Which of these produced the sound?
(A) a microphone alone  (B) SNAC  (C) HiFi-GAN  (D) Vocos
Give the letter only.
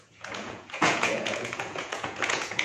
D